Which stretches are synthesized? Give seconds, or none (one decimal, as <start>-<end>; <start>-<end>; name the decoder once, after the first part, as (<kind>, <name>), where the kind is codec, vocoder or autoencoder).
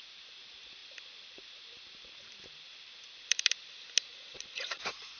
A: 4.1-5.2 (vocoder, Vocos)